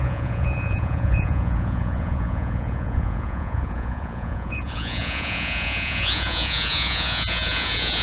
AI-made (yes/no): yes